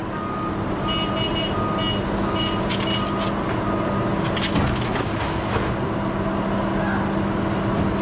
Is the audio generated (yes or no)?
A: no